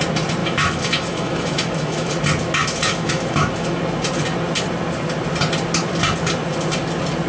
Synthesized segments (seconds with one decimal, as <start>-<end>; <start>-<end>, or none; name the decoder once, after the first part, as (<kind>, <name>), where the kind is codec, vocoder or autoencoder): 0.4-2.1 (autoencoder, DAC-VAE); 2.6-3.8